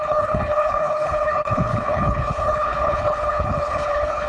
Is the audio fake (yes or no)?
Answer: yes